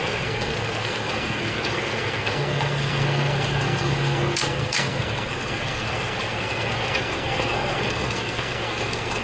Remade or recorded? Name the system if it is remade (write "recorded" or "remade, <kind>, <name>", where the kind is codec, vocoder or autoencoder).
remade, codec, SNAC